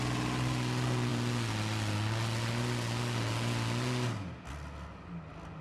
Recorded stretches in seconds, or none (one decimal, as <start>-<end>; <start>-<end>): 0.0-5.6